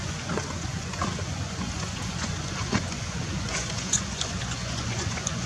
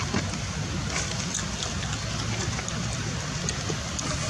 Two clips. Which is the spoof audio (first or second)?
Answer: first